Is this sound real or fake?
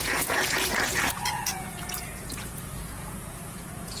fake